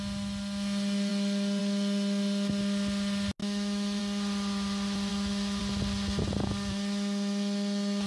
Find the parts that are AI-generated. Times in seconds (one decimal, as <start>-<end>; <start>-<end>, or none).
3.4-4.0; 5.1-5.6